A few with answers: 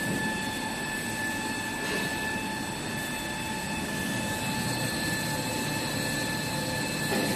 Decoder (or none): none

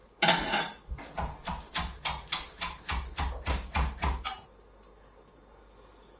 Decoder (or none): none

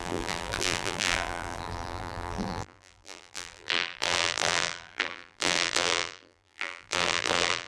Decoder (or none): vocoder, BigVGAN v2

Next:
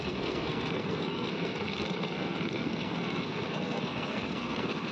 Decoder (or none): codec, SNAC